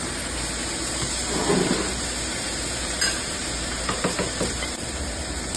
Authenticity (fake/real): fake